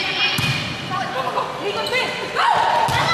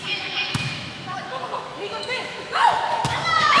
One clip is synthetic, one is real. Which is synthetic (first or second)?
second